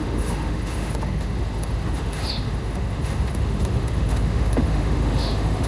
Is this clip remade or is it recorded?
remade